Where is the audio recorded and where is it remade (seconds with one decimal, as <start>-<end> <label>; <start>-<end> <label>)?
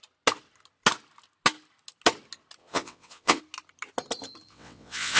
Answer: 0.0-2.6 recorded; 2.6-3.4 remade; 3.4-4.5 recorded; 4.5-5.2 remade